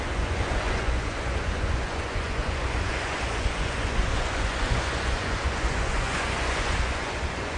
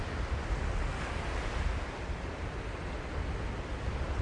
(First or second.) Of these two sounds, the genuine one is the second